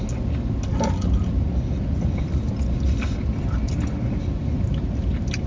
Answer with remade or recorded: recorded